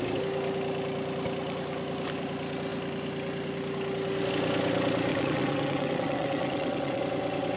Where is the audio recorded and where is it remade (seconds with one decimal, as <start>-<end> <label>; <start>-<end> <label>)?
0.0-5.1 recorded; 5.1-7.0 remade; 7.0-7.6 recorded